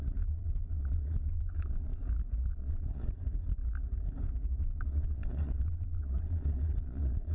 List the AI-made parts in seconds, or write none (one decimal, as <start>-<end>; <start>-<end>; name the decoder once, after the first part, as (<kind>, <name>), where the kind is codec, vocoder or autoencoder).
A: 0.0-1.9 (vocoder, Vocos); 2.5-3.2; 4.6-7.3